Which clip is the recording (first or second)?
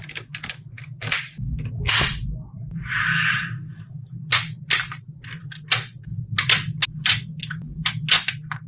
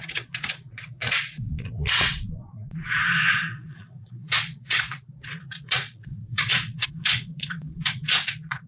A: first